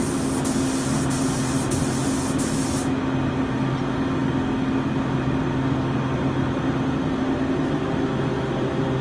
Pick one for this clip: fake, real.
real